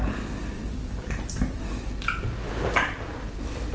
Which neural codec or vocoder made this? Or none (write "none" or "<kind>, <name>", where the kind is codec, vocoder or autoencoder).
none